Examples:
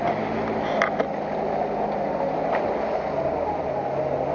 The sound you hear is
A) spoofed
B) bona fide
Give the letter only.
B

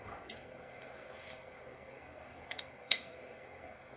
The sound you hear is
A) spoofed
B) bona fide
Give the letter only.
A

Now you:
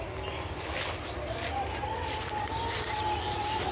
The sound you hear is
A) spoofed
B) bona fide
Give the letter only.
B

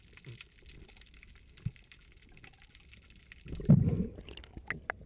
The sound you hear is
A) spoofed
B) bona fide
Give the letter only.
B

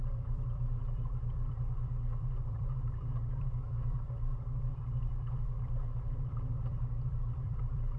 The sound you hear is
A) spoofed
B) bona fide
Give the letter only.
A